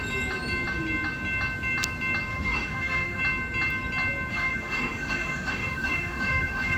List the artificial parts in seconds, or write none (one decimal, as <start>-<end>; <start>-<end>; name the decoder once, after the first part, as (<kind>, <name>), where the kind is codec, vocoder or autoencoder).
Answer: 2.3-3.2 (autoencoder, DAC-VAE); 4.3-6.8